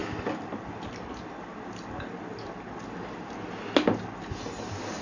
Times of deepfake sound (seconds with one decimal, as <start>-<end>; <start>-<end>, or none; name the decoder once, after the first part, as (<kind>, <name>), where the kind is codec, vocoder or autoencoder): 0.0-0.6 (vocoder, BigVGAN v2)